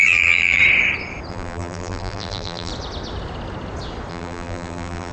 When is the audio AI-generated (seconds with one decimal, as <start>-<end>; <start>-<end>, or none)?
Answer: 0.0-0.6; 1.3-2.7; 4.1-5.1